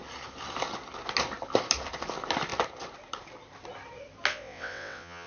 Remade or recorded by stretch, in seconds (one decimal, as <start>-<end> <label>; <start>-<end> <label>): 0.0-4.3 recorded; 4.3-5.3 remade